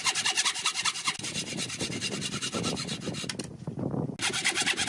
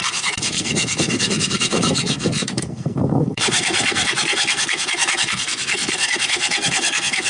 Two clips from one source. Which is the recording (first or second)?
first